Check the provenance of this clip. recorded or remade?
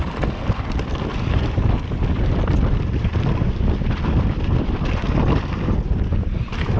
recorded